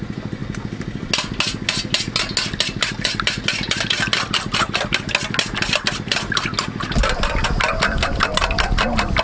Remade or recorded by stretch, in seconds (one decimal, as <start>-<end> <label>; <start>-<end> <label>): 0.0-9.2 recorded